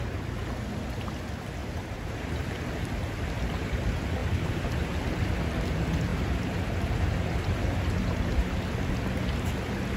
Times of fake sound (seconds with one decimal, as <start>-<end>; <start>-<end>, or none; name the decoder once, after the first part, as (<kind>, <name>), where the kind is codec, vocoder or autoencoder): 1.6-2.6 (vocoder, BigVGAN v2); 4.2-5.0; 6.1-8.6